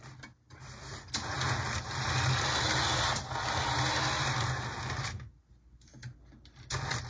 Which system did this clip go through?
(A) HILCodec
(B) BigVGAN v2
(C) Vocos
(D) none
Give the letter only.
D